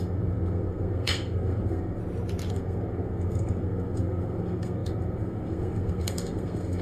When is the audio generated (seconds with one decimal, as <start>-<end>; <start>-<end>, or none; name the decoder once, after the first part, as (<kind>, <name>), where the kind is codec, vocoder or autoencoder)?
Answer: 0.0-2.0 (codec, SNAC); 2.5-6.8